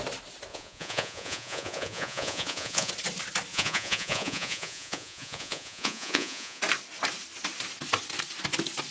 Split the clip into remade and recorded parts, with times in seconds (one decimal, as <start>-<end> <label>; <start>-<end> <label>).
0.0-0.5 recorded; 0.5-2.9 remade; 2.9-3.5 recorded; 3.5-6.6 remade; 6.6-8.9 recorded